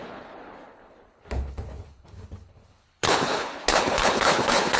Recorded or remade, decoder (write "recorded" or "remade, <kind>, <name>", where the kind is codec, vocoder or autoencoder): remade, codec, HILCodec